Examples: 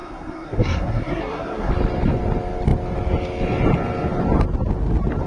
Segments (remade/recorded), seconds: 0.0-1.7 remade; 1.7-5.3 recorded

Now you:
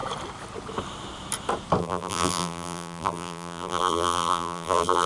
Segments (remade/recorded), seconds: 0.0-1.8 recorded; 1.8-5.1 remade

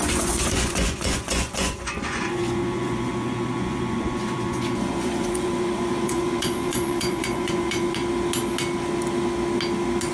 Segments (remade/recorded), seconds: 0.0-8.0 remade; 8.0-10.1 recorded

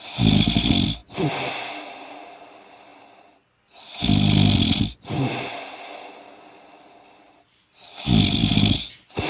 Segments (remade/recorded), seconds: 0.0-9.3 recorded

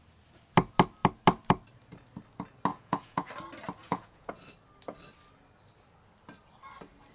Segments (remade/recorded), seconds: 0.0-2.7 recorded; 2.7-3.3 remade; 3.3-3.8 recorded; 3.8-4.3 remade; 4.3-7.1 recorded

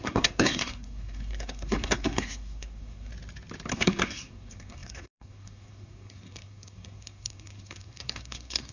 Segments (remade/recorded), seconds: 0.0-3.1 remade; 3.1-3.7 recorded; 3.7-8.7 remade

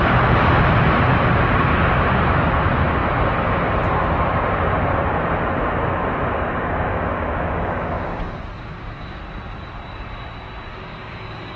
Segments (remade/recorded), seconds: 0.0-6.5 recorded; 6.5-9.2 remade; 9.2-10.7 recorded; 10.7-11.6 remade

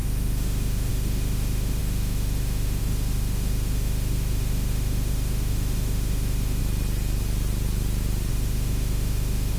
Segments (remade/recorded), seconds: 0.0-6.6 remade; 6.6-8.3 recorded; 8.3-9.6 remade